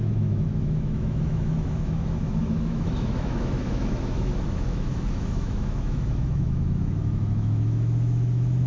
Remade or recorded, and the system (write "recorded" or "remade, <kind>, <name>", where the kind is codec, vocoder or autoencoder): remade, autoencoder, DAC-VAE